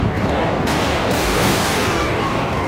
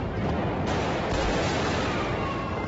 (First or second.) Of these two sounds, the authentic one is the second